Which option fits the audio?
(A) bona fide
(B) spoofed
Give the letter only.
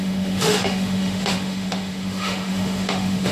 B